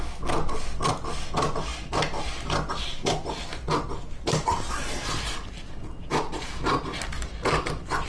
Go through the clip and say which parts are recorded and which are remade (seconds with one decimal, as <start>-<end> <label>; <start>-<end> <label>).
0.0-8.1 recorded